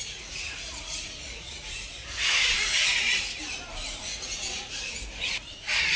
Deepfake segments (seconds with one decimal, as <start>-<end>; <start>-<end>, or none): 0.0-3.6; 4.1-6.0